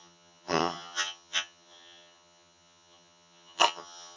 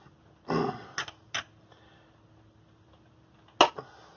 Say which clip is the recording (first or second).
second